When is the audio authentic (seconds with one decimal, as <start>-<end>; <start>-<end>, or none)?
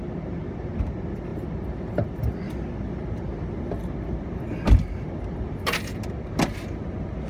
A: 0.0-7.3